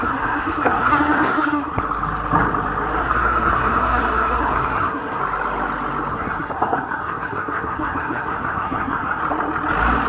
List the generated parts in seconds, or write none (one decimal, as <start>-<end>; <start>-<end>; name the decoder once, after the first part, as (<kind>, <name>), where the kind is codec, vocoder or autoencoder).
0.0-1.8 (codec, SNAC); 3.0-5.2; 6.1-9.2